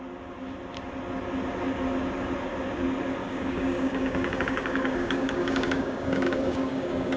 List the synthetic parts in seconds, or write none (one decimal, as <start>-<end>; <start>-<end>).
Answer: 3.2-7.2